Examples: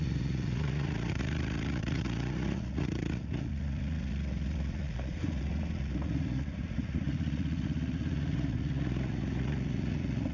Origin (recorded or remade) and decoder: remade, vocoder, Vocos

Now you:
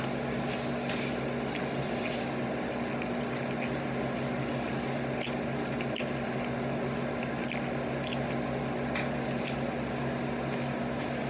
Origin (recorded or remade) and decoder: recorded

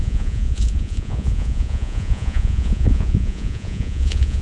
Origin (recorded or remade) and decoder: remade, vocoder, Vocos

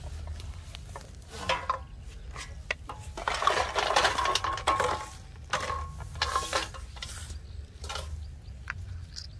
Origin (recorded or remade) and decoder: recorded